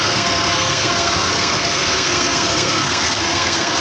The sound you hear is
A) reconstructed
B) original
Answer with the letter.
A